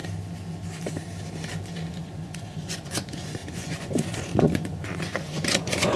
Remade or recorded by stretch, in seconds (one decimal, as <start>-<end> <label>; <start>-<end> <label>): 0.0-1.9 recorded; 1.9-6.0 remade